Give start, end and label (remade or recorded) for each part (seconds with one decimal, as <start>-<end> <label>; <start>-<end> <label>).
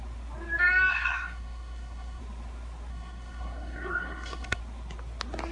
0.0-0.9 recorded; 0.9-2.2 remade; 2.2-2.9 recorded; 2.9-4.6 remade; 4.6-5.5 recorded